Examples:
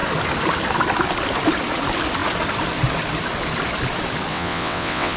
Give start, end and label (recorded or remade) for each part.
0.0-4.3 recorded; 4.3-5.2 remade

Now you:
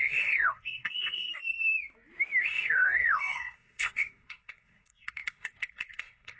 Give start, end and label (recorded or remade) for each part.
0.0-1.3 remade; 1.3-2.4 recorded; 2.4-6.4 remade

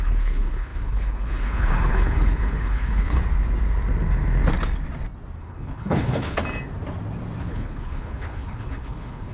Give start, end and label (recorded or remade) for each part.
0.0-3.2 remade; 3.2-5.4 recorded; 5.4-6.4 remade; 6.4-7.4 recorded; 7.4-9.3 remade

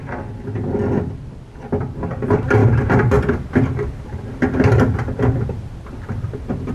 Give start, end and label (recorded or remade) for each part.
0.0-6.7 recorded